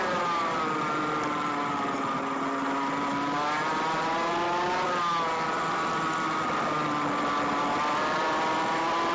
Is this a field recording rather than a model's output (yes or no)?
yes